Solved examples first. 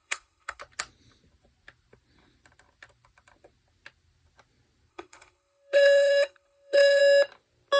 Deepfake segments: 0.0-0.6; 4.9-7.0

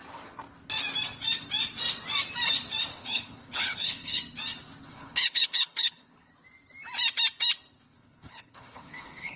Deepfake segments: 2.9-4.2; 4.9-6.3; 7.9-9.4